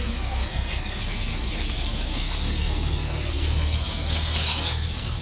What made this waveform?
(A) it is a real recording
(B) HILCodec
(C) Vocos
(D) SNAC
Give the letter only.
D